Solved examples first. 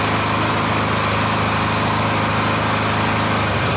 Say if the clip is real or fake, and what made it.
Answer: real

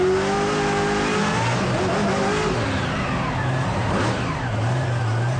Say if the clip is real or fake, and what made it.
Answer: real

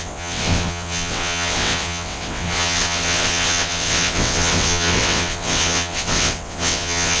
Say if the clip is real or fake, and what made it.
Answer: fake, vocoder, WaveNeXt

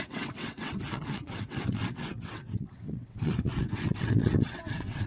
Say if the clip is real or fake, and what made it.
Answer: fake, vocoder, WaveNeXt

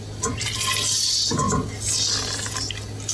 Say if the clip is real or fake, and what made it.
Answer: real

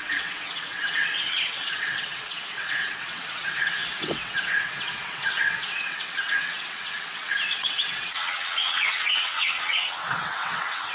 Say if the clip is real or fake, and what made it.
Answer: fake, vocoder, WaveNeXt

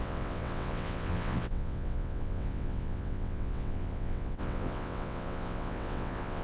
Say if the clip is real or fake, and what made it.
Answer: fake, vocoder, WaveNeXt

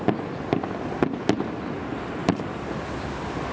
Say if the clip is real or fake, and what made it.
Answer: real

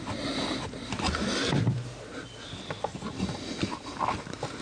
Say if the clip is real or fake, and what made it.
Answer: real